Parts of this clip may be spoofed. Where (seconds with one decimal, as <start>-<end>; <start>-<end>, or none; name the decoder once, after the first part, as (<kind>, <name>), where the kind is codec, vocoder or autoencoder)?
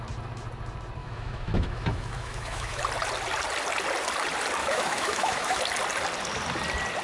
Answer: 1.0-2.8 (autoencoder, DAC-VAE); 4.6-5.6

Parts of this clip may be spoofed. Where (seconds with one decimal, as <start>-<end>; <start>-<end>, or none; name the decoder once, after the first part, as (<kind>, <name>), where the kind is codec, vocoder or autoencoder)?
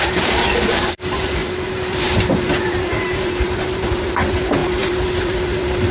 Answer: 0.0-5.9 (vocoder, BigVGAN v2)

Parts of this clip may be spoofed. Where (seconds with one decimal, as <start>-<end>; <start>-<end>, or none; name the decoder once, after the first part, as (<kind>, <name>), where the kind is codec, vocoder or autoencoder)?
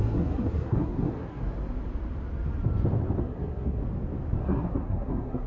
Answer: 0.0-1.4 (codec, SNAC); 3.2-3.8; 4.4-5.5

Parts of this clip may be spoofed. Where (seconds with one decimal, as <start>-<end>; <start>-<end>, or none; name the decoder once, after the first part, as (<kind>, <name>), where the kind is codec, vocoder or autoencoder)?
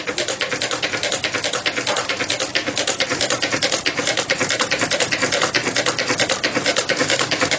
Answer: 6.7-7.6 (codec, DAC)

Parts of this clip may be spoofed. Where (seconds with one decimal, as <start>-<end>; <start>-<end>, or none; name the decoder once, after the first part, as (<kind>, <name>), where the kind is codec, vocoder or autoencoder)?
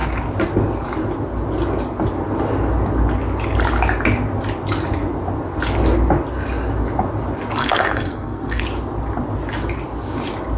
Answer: 7.6-8.6 (codec, SNAC)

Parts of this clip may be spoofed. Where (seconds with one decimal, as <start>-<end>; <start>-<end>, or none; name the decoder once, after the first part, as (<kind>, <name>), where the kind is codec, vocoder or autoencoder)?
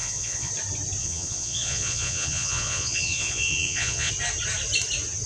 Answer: 0.0-0.5 (vocoder, Vocos); 1.0-4.1